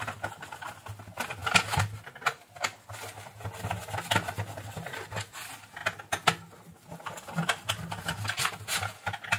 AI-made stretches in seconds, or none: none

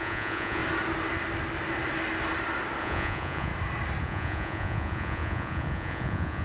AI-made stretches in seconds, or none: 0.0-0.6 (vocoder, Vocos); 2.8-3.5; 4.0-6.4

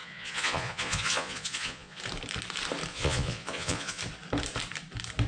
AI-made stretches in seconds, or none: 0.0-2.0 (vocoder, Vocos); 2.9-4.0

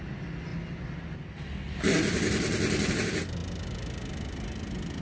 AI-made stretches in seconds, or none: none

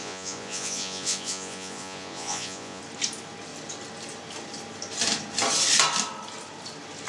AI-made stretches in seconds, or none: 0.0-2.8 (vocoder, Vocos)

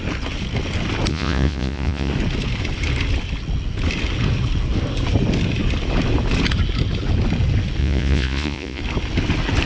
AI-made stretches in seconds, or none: 1.1-2.1 (vocoder, Vocos); 7.8-8.8

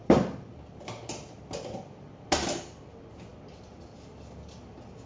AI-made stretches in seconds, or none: none

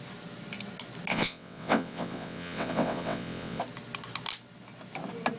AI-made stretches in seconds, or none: 1.1-3.6 (vocoder, WaveNeXt)